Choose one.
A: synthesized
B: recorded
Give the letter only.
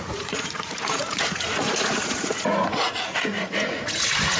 A